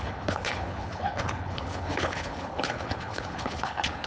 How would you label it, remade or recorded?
remade